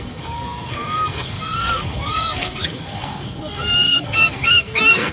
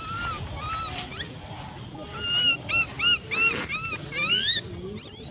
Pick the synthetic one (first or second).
first